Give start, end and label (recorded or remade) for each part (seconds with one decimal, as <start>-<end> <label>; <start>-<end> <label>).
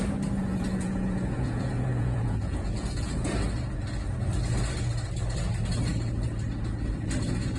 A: 0.0-0.4 recorded; 0.4-3.3 remade; 3.3-7.6 recorded